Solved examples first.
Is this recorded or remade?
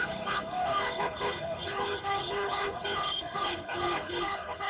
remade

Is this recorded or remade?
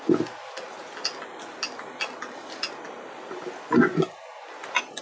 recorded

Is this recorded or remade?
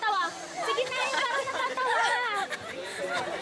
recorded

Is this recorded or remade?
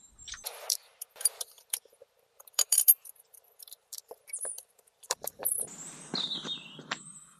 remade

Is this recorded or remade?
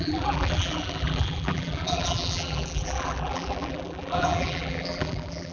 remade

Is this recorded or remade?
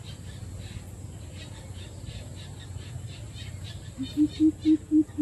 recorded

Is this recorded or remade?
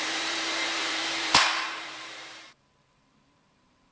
remade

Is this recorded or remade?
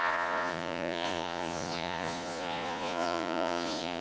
remade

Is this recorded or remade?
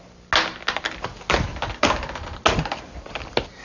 recorded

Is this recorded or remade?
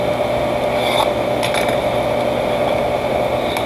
recorded